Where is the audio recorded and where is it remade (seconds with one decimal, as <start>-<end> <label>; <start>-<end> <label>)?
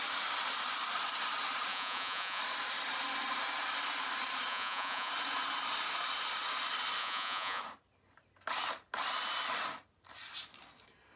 0.0-1.7 recorded; 1.7-2.4 remade; 2.4-4.5 recorded; 4.5-5.1 remade; 5.1-7.0 recorded; 7.0-7.6 remade; 7.6-11.2 recorded